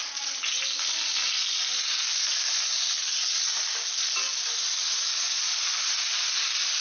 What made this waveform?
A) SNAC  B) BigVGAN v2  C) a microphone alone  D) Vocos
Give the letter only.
C